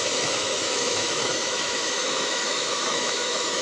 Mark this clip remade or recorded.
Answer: remade